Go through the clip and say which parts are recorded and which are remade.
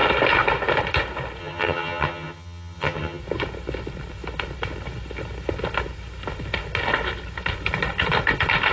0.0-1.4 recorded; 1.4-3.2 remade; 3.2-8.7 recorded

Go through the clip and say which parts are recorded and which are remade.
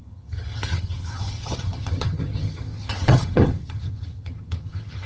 0.0-5.1 remade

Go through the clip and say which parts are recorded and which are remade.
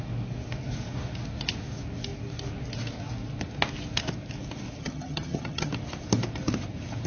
0.0-4.8 recorded; 4.8-5.7 remade; 5.7-7.1 recorded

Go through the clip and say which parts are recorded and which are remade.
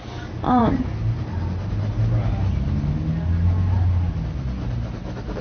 0.0-5.4 recorded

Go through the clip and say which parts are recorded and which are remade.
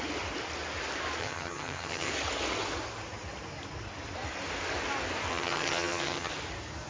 0.0-1.2 recorded; 1.2-2.1 remade; 2.1-5.3 recorded; 5.3-6.3 remade; 6.3-6.9 recorded